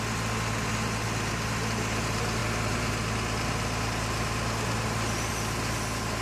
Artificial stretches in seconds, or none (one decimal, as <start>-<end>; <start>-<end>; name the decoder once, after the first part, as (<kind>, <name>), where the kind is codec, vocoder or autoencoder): none